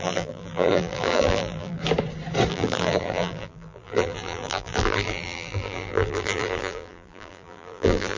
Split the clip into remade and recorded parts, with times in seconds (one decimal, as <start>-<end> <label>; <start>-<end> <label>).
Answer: 0.0-1.8 remade; 1.8-2.5 recorded; 2.5-8.2 remade